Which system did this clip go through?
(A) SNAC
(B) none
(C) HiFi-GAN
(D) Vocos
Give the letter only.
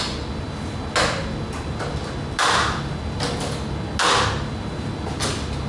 B